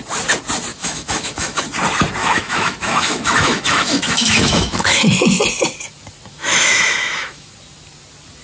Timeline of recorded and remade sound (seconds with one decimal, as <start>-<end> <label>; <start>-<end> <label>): 0.0-0.7 recorded; 0.7-1.6 remade; 1.6-2.2 recorded; 2.2-5.4 remade; 5.4-6.3 recorded; 6.3-7.5 remade; 7.5-8.4 recorded